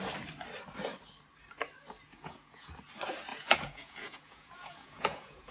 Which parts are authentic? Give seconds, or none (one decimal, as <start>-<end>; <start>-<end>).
0.0-2.1; 2.7-3.3